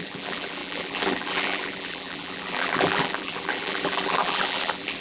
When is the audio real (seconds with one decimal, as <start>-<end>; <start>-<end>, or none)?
none